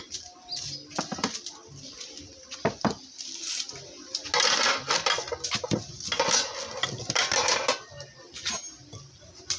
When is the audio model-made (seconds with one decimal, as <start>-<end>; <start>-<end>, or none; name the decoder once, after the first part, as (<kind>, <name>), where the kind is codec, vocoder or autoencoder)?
none